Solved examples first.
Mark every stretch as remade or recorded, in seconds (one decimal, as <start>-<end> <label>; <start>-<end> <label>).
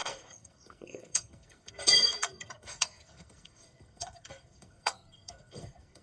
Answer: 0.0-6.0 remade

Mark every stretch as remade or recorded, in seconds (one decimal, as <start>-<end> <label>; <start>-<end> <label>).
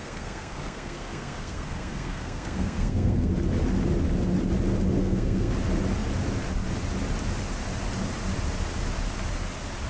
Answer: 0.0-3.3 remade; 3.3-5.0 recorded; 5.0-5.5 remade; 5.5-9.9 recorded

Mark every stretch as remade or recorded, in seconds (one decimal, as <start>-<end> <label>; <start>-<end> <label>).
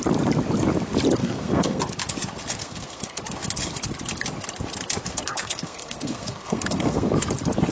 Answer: 0.0-1.2 recorded; 1.2-1.8 remade; 1.8-2.6 recorded; 2.6-3.2 remade; 3.2-5.1 recorded; 5.1-7.1 remade; 7.1-7.7 recorded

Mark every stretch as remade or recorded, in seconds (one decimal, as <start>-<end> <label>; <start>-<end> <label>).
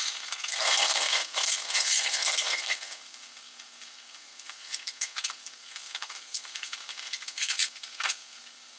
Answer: 0.0-8.8 remade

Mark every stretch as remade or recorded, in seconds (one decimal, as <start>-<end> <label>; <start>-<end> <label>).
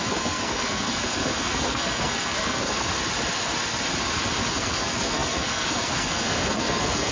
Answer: 0.0-2.9 remade; 2.9-4.5 recorded; 4.5-7.1 remade